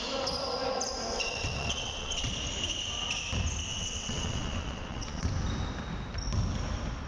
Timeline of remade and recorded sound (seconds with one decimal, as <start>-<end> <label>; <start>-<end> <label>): 0.0-1.1 recorded; 1.1-2.3 remade; 2.3-3.7 recorded; 3.7-5.3 remade; 5.3-7.1 recorded

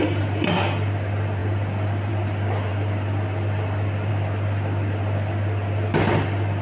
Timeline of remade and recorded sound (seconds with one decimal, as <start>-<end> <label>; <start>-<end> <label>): 0.0-1.4 recorded; 1.4-2.1 remade; 2.1-2.7 recorded; 2.7-4.1 remade; 4.1-6.6 recorded

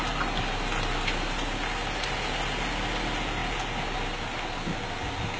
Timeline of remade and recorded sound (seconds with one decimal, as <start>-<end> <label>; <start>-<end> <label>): 0.0-5.4 recorded

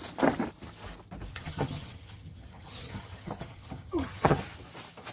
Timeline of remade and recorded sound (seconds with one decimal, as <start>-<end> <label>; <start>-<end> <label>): 0.0-1.3 recorded; 1.3-4.4 remade; 4.4-5.1 recorded